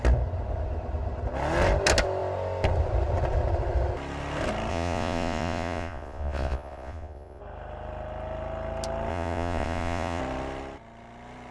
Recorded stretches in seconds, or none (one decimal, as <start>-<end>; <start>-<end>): 0.0-4.7; 7.4-9.1; 10.2-11.5